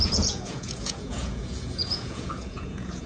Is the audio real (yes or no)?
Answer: no